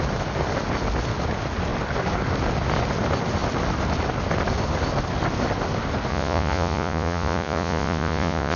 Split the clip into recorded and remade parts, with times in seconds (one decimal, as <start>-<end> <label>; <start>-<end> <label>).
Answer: 0.0-6.1 recorded; 6.1-8.6 remade